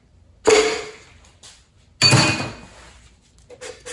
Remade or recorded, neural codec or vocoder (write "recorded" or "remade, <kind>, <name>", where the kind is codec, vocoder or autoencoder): recorded